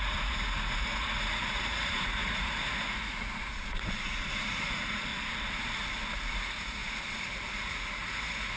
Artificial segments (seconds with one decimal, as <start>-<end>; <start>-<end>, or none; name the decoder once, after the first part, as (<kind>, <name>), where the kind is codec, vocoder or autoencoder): 0.0-5.1 (vocoder, Vocos); 6.3-8.6